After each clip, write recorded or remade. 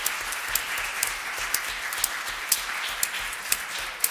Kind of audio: recorded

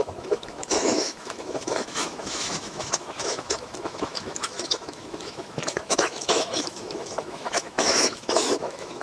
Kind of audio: remade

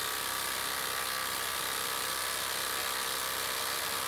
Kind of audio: remade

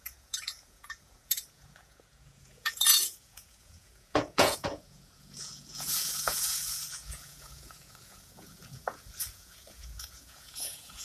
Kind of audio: remade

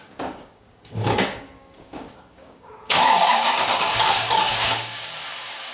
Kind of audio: remade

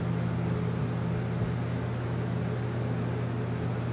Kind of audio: recorded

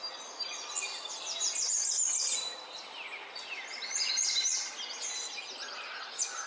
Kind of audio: recorded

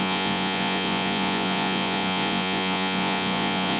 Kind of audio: remade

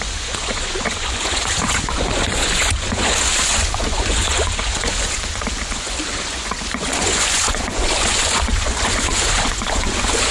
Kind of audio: remade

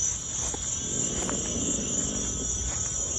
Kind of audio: recorded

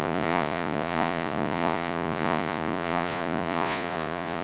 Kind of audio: remade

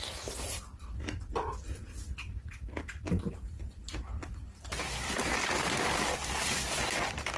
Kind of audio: recorded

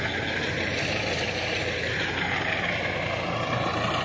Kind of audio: recorded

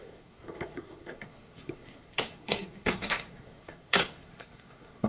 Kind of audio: remade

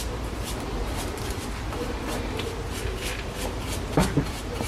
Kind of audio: recorded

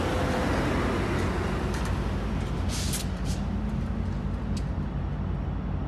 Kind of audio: recorded